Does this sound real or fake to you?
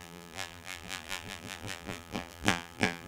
fake